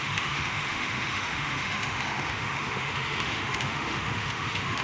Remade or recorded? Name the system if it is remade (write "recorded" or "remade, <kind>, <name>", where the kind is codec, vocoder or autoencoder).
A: remade, autoencoder, DAC-VAE